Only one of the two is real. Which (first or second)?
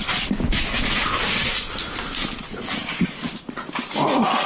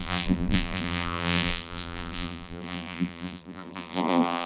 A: first